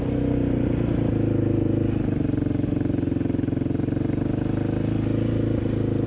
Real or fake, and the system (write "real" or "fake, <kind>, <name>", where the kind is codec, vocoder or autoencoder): real